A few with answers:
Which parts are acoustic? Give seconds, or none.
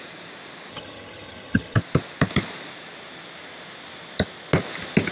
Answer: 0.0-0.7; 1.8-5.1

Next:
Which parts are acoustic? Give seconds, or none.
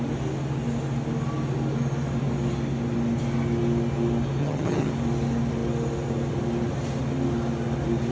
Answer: 0.0-4.4; 4.9-8.1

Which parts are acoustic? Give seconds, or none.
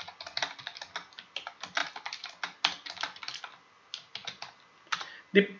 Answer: 0.0-5.6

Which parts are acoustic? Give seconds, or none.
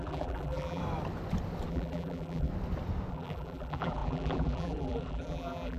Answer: 0.8-1.7; 2.5-3.1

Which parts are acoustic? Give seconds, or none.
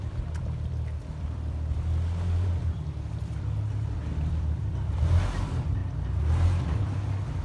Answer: 5.8-6.6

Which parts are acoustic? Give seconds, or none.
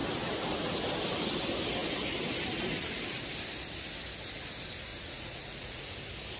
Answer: 0.0-4.9; 5.9-6.4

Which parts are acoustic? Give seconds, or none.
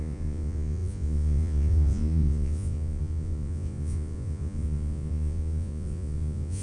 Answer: none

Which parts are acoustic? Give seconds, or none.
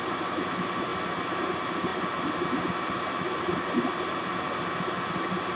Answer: 0.9-1.5; 1.9-4.8